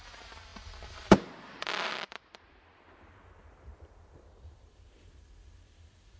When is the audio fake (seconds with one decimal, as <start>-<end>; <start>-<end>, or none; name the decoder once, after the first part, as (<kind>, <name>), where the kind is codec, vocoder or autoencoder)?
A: 0.0-6.2 (vocoder, BigVGAN v2)